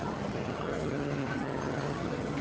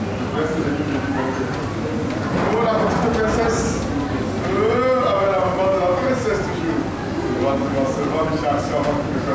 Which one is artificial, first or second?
first